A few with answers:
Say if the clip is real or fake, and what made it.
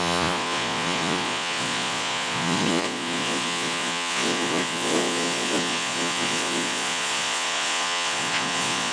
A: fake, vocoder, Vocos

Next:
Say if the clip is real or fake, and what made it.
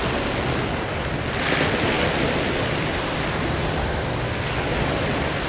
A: real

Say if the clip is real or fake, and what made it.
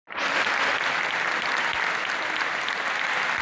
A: real